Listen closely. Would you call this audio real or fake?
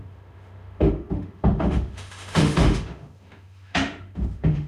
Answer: fake